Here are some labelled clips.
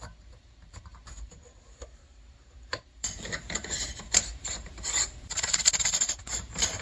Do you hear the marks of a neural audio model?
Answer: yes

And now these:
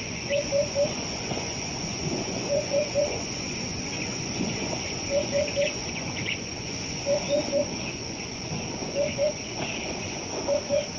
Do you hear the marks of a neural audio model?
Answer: yes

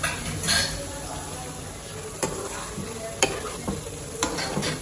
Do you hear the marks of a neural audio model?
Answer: no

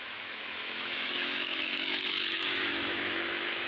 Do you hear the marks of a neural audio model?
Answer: yes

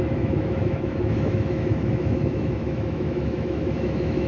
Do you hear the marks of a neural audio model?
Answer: yes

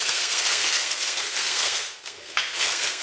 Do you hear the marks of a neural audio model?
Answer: yes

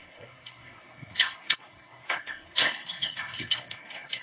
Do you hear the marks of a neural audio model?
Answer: yes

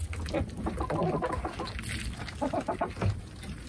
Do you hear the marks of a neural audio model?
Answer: no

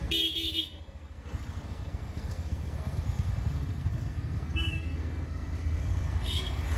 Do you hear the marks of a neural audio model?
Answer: yes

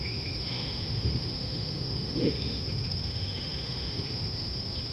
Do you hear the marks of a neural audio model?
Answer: yes